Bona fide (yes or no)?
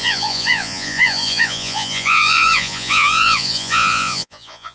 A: no